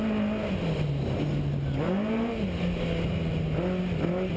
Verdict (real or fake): real